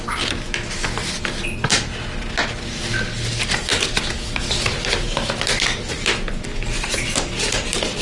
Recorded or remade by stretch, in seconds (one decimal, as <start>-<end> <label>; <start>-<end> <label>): 0.0-8.0 recorded